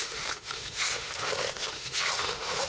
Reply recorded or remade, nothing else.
remade